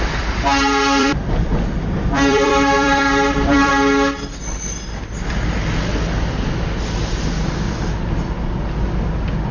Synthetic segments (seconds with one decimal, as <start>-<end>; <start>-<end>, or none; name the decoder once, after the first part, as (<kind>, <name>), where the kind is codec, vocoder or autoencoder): 1.0-3.7 (vocoder, BigVGAN v2)